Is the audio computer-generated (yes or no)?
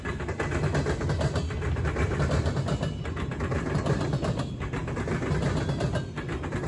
no